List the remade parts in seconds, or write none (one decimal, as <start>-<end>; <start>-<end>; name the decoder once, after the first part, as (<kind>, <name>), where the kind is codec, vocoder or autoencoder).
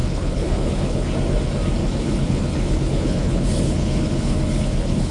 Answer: 0.0-1.1 (codec, HILCodec); 1.8-5.1